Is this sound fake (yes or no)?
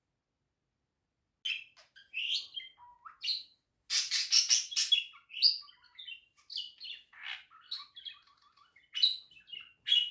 no